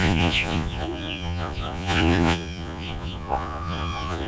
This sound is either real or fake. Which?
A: fake